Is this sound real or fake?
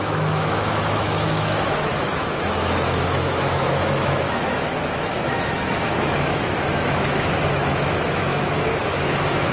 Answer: fake